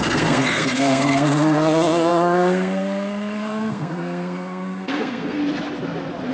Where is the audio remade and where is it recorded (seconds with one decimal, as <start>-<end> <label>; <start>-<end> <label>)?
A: 0.0-5.4 remade; 5.4-6.3 recorded